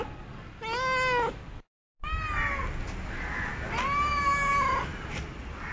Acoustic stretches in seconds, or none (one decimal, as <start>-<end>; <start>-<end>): 0.0-5.7